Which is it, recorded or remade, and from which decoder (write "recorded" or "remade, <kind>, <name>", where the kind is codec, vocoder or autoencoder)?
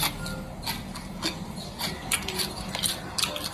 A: recorded